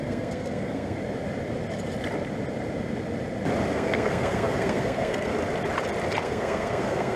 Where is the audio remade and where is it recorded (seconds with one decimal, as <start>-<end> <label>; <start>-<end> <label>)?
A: 0.0-1.0 remade; 1.0-3.7 recorded; 3.7-5.3 remade; 5.3-6.2 recorded; 6.2-7.2 remade